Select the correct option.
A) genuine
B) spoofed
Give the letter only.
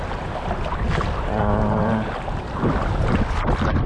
A